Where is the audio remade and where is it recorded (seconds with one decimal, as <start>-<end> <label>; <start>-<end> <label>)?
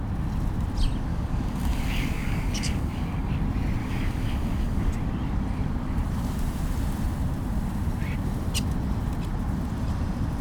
0.0-1.1 recorded; 1.1-3.3 remade; 3.3-3.8 recorded; 3.8-4.9 remade; 4.9-10.4 recorded